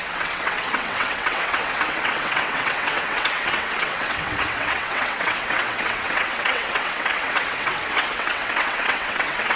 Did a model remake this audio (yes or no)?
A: yes